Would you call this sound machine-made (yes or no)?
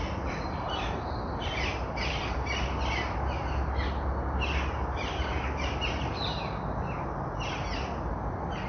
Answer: no